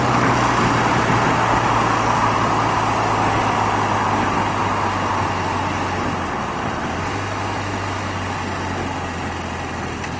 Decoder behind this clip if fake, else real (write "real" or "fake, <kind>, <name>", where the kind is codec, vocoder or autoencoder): real